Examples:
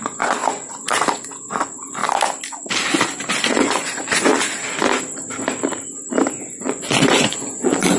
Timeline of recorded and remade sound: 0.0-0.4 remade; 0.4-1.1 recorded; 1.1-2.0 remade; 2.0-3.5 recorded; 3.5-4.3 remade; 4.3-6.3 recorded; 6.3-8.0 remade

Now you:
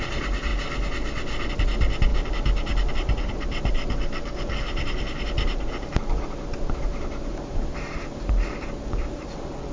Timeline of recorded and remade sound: 0.0-0.5 remade; 0.5-1.5 recorded; 1.5-9.7 remade